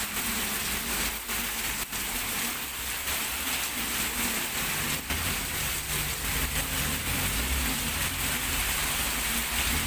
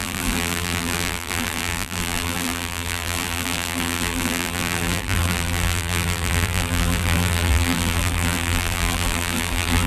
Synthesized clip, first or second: second